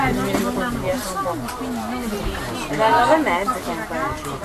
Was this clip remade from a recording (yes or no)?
no